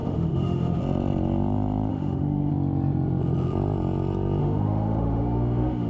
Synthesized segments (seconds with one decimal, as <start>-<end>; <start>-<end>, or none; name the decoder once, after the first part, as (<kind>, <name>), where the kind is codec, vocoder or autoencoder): 0.0-0.8 (autoencoder, DAC-VAE); 1.9-2.5; 4.4-5.9